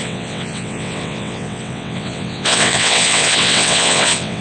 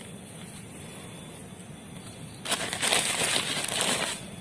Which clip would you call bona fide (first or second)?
second